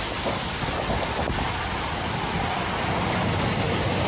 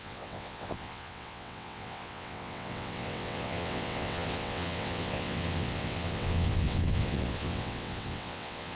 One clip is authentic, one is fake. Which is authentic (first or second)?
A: first